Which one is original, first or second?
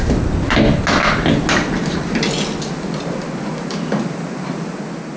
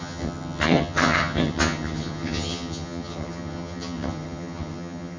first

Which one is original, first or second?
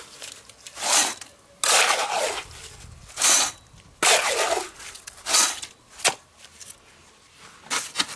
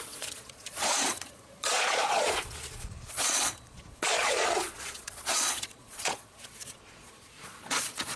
first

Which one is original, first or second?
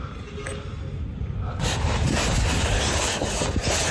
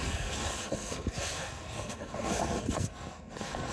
first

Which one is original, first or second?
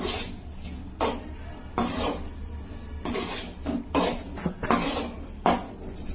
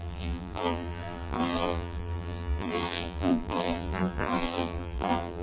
first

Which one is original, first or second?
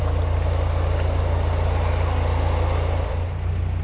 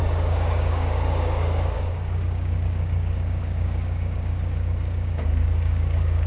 first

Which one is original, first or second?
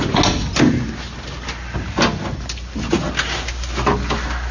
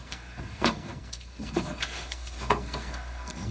first